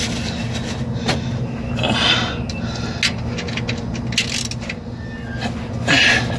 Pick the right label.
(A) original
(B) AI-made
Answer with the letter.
A